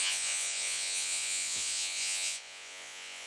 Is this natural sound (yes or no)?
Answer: no